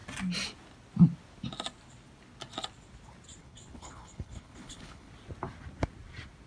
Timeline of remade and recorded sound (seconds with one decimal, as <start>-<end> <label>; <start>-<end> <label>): 0.0-3.4 recorded; 3.4-5.1 remade; 5.1-6.5 recorded